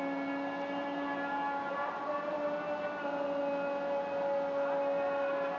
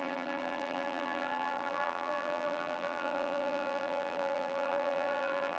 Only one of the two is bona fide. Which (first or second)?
first